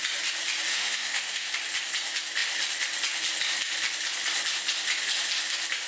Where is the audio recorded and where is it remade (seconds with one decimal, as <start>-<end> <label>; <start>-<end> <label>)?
0.0-0.7 recorded; 0.7-1.5 remade; 1.5-5.9 recorded